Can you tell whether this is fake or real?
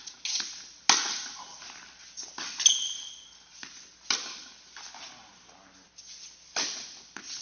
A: real